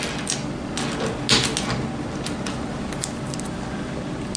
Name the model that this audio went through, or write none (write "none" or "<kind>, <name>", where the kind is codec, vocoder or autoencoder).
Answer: none